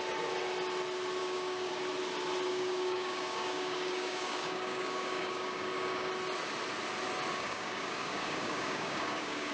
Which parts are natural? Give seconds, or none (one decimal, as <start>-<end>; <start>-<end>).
0.0-1.2; 1.7-2.5; 6.1-7.3